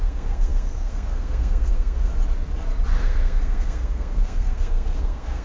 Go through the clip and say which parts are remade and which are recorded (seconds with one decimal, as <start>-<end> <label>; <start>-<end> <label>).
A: 0.0-2.1 remade; 2.1-3.0 recorded; 3.0-5.4 remade

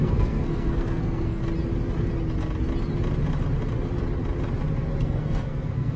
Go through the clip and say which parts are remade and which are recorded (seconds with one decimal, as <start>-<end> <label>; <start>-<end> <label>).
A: 0.0-1.4 remade; 1.4-5.0 recorded; 5.0-6.0 remade

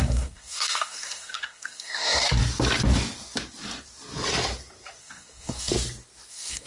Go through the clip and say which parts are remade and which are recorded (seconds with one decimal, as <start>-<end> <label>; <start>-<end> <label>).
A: 0.0-2.4 remade; 2.4-5.0 recorded; 5.0-5.7 remade; 5.7-6.3 recorded; 6.3-6.7 remade

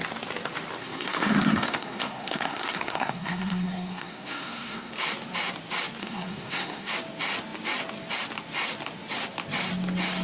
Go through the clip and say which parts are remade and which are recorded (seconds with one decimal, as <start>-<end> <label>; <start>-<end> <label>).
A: 0.0-0.8 recorded; 0.8-4.9 remade; 4.9-6.0 recorded; 6.0-6.9 remade; 6.9-10.2 recorded